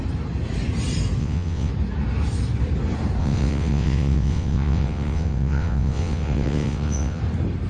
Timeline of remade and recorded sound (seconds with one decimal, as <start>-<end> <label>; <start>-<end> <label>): 0.0-1.2 recorded; 1.2-1.7 remade; 1.7-3.2 recorded; 3.2-7.2 remade; 7.2-7.7 recorded